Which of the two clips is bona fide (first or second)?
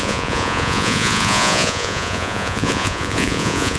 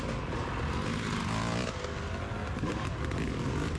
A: second